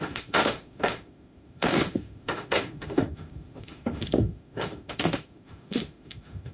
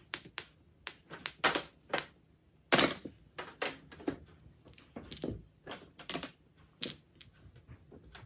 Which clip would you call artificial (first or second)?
first